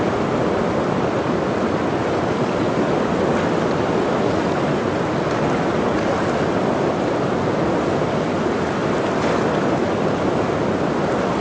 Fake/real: real